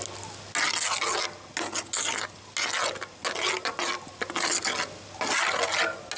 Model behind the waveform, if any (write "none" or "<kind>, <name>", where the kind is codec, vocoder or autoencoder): none